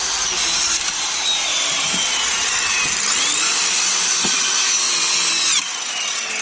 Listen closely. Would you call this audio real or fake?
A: real